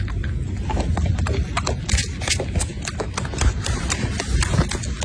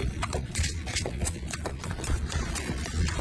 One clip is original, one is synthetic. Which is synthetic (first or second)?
second